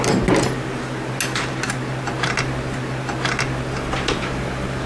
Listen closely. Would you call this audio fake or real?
real